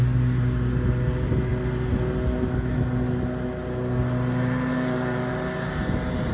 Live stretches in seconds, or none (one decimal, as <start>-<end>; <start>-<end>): 0.0-6.3